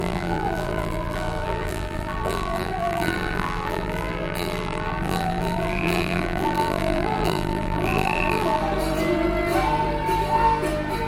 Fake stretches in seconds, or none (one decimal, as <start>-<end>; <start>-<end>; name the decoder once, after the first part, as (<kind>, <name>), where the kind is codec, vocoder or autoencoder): 0.0-8.6 (vocoder, BigVGAN v2)

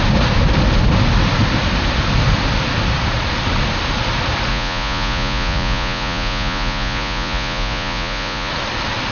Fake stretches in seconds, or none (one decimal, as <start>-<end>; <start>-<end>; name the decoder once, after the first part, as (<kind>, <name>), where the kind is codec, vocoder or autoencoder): 4.5-8.5 (vocoder, Vocos)

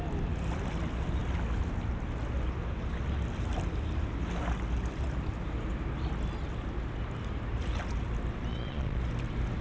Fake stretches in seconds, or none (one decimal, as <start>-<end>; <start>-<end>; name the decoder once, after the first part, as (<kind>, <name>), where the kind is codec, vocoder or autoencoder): 8.5-9.0 (vocoder, Vocos)

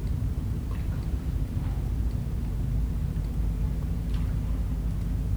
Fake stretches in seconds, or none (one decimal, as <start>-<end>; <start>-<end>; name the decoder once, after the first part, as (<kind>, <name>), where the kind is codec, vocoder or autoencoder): 0.0-3.2 (vocoder, BigVGAN v2)

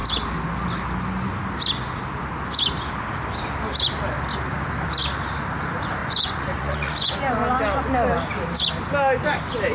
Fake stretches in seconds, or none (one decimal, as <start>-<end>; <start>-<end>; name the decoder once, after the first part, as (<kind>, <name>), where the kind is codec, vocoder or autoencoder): 6.0-7.2 (vocoder, Vocos)

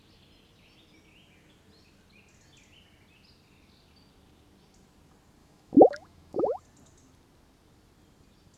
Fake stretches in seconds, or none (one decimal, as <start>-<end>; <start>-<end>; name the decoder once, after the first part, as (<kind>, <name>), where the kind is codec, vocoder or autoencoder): 5.4-6.6 (autoencoder, DAC-VAE)

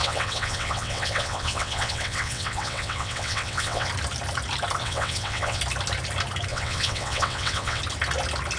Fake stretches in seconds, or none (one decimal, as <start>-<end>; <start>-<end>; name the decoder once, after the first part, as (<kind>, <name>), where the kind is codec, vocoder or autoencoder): 0.0-3.9 (vocoder, WaveNeXt); 4.8-5.6; 6.5-7.8

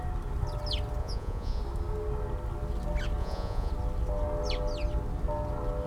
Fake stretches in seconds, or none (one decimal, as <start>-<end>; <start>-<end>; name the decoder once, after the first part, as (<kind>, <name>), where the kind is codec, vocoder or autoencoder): 1.0-1.6 (vocoder, Vocos); 3.2-3.7